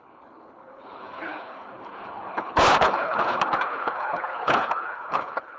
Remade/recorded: remade